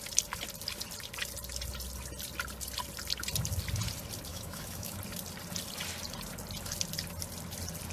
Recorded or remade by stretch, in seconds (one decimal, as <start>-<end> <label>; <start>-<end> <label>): 0.0-4.3 recorded; 4.3-5.0 remade; 5.0-7.9 recorded